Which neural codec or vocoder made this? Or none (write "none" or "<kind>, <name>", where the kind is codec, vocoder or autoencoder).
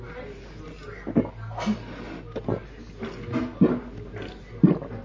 none